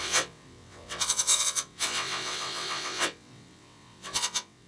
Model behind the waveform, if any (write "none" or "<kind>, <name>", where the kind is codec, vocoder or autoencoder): vocoder, WaveNeXt